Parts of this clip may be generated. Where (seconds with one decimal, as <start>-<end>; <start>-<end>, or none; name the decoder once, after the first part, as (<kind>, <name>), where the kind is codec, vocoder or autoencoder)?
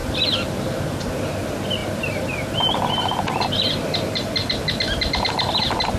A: 0.0-0.8 (vocoder, BigVGAN v2); 1.8-4.1